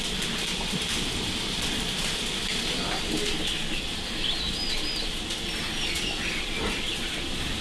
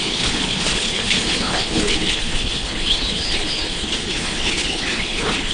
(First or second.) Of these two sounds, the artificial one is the second